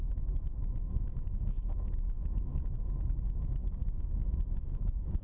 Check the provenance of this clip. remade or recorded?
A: remade